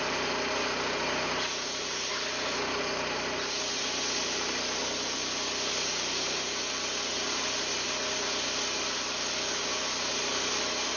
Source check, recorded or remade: recorded